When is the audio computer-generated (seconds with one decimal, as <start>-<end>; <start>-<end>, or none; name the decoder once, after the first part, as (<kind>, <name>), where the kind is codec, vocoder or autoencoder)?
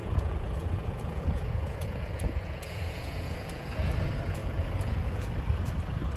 0.0-3.7 (vocoder, Vocos); 4.4-5.3